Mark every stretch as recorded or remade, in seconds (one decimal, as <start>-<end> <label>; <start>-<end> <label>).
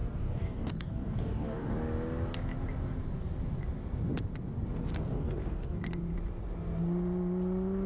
0.0-1.7 remade; 1.7-5.1 recorded; 5.1-5.8 remade; 5.8-7.9 recorded